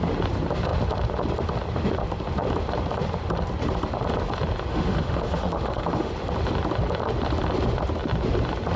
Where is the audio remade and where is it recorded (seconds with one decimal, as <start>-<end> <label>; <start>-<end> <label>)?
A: 0.0-4.7 recorded; 4.7-6.1 remade; 6.1-8.8 recorded